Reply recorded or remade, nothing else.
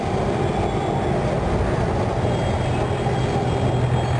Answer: recorded